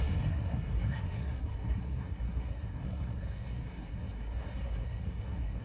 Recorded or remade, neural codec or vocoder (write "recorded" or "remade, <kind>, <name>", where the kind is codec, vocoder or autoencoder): remade, codec, SNAC